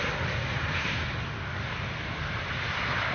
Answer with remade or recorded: recorded